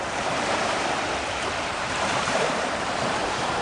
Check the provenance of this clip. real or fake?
fake